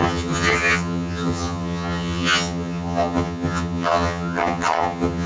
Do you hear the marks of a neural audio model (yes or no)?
yes